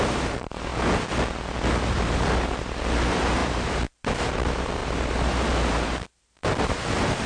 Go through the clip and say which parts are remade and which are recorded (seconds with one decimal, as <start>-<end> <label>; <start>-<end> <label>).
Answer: 0.0-0.7 remade; 0.7-1.7 recorded; 1.7-7.3 remade